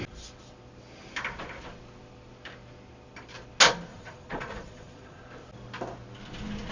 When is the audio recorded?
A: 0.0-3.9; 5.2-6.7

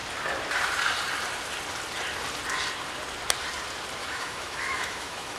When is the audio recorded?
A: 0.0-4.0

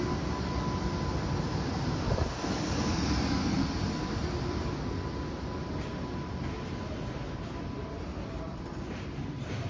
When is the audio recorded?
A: 0.0-8.5; 9.1-9.7

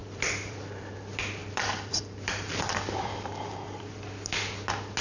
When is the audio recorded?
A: 0.9-1.4; 3.9-5.0